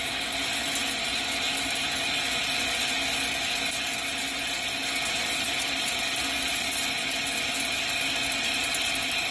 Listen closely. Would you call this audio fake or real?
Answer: real